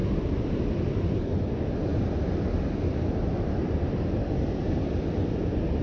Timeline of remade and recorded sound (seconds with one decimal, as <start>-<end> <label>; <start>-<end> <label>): 0.0-5.8 recorded